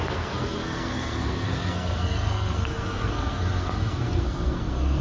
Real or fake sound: fake